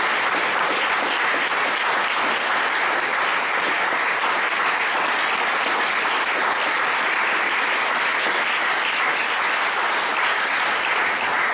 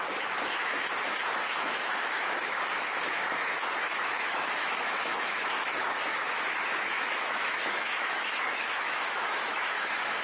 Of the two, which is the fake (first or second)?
second